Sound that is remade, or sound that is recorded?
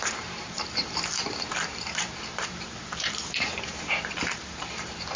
remade